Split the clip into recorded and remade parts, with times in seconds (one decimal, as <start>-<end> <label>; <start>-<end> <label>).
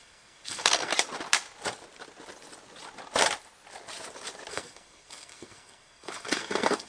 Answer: 0.0-0.9 remade; 0.9-4.5 recorded; 4.5-6.9 remade